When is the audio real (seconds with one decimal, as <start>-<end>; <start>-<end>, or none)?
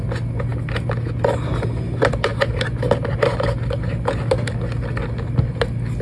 0.0-6.0